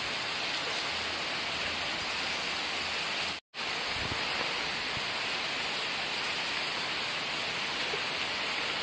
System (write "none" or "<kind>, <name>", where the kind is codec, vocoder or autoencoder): none